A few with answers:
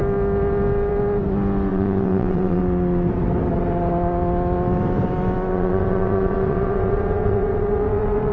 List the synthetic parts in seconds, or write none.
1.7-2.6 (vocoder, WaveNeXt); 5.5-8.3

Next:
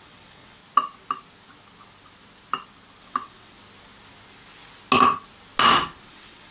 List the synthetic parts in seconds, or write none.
0.0-0.6 (vocoder, WaveNeXt); 3.0-3.6; 6.1-6.5

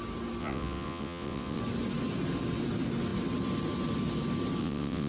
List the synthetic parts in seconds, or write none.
0.4-1.6 (vocoder, WaveNeXt); 4.6-5.1

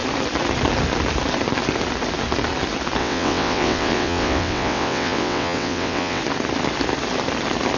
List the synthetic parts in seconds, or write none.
3.0-6.2 (vocoder, WaveNeXt)

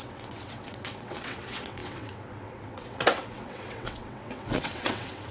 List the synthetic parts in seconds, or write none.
0.0-5.3 (vocoder, WaveNeXt)

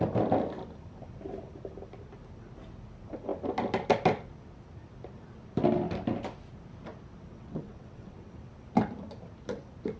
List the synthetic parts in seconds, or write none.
7.3-8.5 (vocoder, WaveNeXt)

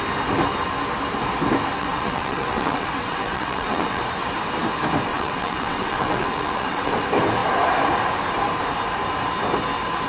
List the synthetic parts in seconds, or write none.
1.8-4.0 (vocoder, WaveNeXt); 5.1-6.9

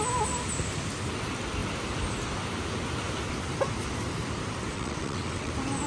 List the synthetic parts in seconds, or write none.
4.7-5.5 (vocoder, WaveNeXt)